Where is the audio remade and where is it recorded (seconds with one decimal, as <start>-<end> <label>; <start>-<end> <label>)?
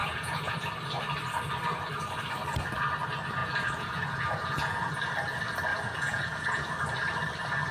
0.0-0.7 remade; 0.7-3.4 recorded; 3.4-5.0 remade; 5.0-5.7 recorded; 5.7-6.7 remade; 6.7-7.7 recorded